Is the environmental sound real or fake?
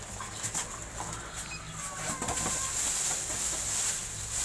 real